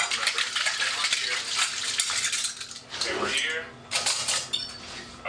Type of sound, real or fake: real